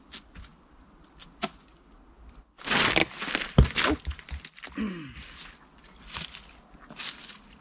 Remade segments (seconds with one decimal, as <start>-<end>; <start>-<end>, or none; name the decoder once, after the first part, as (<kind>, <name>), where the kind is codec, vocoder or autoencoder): none